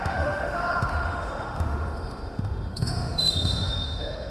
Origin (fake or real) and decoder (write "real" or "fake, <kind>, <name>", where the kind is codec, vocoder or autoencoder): fake, autoencoder, DAC-VAE